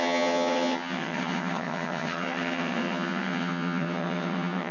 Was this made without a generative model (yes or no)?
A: no